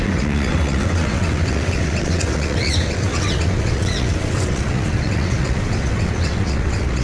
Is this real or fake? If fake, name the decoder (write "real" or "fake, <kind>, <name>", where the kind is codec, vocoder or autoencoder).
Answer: fake, vocoder, WaveNeXt